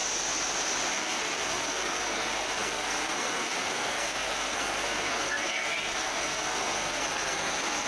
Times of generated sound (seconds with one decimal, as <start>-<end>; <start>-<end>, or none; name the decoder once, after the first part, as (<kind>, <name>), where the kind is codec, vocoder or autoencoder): 0.9-7.9 (codec, SNAC)